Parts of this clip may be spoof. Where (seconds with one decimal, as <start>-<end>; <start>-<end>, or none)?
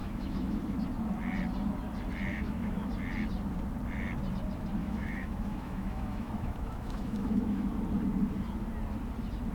0.0-0.6; 2.3-2.9; 4.8-7.7